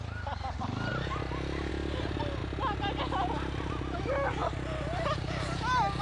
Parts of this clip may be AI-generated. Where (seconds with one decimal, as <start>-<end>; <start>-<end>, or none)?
none